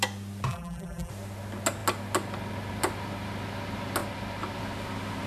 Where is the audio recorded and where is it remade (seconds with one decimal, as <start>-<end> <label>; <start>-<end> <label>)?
0.0-0.5 recorded; 0.5-1.1 remade; 1.1-5.3 recorded